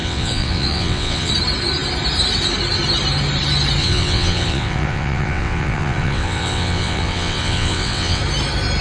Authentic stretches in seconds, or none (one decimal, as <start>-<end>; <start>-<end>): 1.3-3.8; 8.2-8.8